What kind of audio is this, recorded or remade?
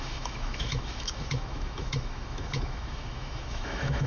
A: remade